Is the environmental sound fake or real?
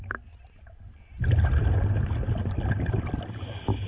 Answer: real